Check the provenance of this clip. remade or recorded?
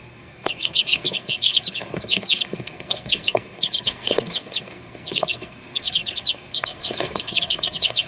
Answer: remade